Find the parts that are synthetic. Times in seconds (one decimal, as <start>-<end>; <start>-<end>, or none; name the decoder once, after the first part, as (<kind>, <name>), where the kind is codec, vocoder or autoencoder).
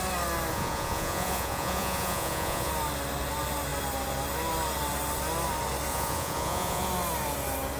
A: 0.5-2.7 (vocoder, Vocos); 5.9-6.9